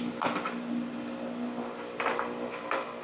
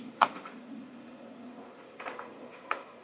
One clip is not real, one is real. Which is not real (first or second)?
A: second